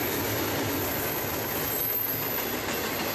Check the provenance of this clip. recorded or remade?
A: recorded